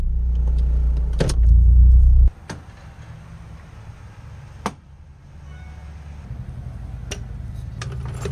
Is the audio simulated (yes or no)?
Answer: no